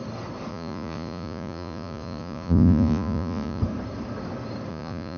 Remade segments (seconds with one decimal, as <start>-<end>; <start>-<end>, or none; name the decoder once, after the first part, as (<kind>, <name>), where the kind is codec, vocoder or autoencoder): 0.5-3.6 (vocoder, Vocos); 4.7-5.2